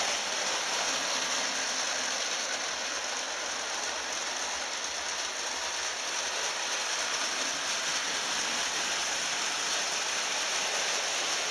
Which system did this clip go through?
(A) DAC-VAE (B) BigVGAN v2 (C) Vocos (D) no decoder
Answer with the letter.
D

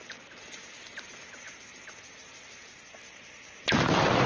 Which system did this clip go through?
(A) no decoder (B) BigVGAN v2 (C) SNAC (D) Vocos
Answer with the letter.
A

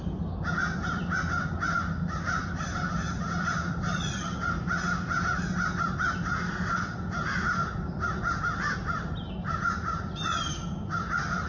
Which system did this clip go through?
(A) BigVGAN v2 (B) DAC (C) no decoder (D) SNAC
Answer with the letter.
C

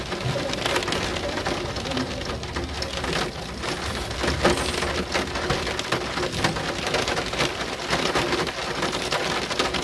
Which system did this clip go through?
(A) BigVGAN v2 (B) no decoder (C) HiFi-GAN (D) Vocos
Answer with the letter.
B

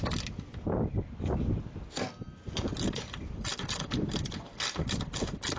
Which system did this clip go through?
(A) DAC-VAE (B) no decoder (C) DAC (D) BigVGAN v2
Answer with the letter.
B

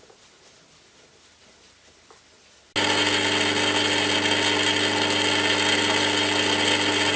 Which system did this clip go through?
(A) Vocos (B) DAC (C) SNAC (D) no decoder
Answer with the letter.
D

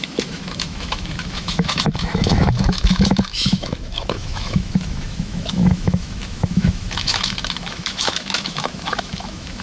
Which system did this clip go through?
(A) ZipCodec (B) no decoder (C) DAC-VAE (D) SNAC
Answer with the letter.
C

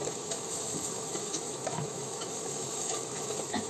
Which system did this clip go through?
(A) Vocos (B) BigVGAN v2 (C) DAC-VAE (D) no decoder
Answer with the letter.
C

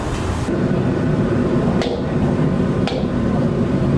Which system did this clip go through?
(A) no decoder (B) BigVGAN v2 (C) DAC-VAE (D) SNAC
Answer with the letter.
A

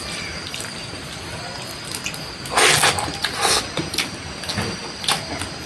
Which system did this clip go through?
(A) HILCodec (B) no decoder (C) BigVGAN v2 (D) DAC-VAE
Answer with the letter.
B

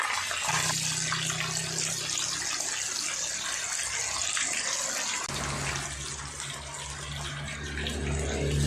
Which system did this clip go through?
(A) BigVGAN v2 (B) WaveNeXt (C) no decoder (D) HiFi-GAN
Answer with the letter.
C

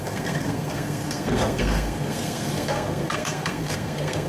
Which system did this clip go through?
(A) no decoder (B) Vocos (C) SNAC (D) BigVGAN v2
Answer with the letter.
C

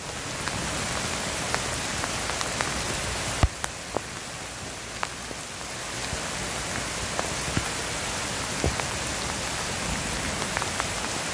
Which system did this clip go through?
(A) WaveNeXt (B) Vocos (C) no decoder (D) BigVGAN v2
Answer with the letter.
C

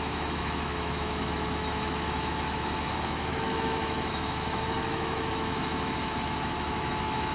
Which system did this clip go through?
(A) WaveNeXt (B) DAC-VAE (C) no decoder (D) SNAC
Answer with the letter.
B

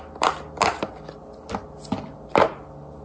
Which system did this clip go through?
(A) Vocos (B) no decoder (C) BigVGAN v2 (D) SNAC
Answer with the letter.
B